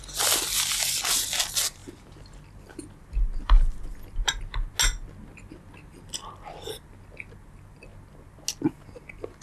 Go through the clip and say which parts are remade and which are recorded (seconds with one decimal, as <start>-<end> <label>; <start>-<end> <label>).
0.0-9.4 recorded